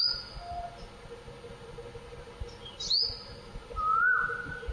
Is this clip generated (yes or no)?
no